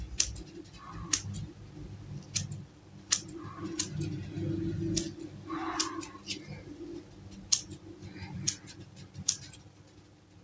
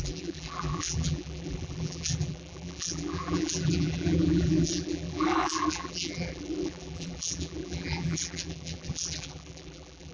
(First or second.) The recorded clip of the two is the first